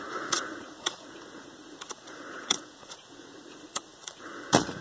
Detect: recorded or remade remade